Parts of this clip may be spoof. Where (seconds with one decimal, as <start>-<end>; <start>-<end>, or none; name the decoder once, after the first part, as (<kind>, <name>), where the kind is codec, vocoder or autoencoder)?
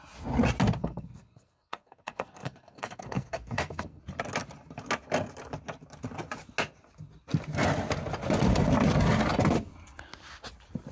0.8-4.0 (codec, SNAC)